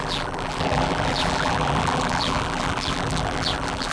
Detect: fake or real fake